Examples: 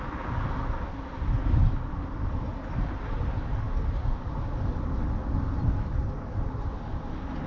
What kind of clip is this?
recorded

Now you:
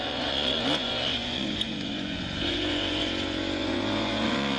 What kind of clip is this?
remade